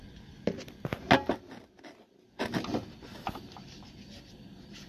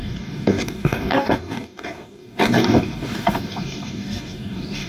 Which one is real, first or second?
first